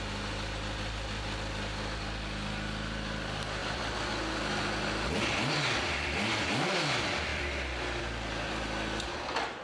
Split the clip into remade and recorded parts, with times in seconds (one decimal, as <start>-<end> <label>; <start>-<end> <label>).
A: 0.0-9.6 recorded